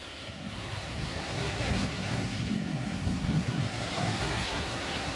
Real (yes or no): no